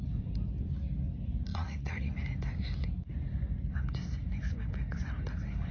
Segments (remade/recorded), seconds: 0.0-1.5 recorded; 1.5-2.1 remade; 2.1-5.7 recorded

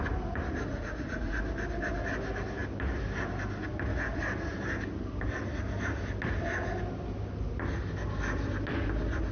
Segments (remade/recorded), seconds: 0.0-0.7 recorded; 0.7-1.4 remade; 1.4-9.3 recorded

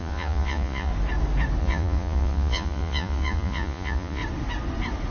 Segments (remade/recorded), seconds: 0.0-0.9 remade; 0.9-1.6 recorded; 1.6-4.2 remade; 4.2-5.1 recorded

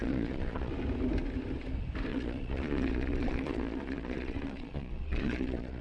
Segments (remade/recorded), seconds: 0.0-0.7 remade; 0.7-2.1 recorded; 2.1-5.8 remade

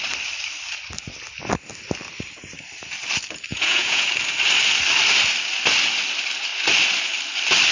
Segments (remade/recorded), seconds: 0.0-3.5 recorded; 3.5-4.1 remade; 4.1-7.7 recorded